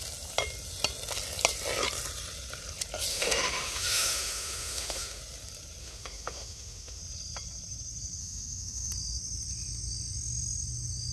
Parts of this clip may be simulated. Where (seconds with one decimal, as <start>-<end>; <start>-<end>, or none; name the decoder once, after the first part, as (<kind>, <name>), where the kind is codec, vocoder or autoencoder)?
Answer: 3.1-5.2 (autoencoder, DAC-VAE); 5.8-7.0; 8.2-8.9